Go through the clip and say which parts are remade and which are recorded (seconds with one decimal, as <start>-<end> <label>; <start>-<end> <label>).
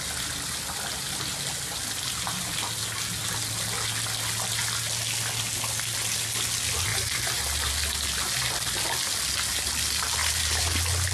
0.0-6.9 recorded; 6.9-7.7 remade; 7.7-10.2 recorded; 10.2-10.7 remade; 10.7-11.1 recorded